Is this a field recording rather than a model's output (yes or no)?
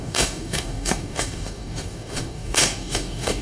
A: no